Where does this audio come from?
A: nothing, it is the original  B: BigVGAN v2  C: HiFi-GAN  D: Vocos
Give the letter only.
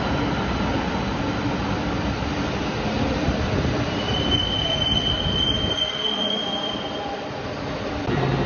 B